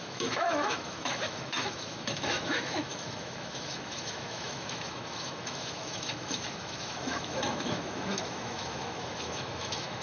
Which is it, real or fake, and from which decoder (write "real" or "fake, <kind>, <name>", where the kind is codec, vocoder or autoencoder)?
fake, autoencoder, DAC-VAE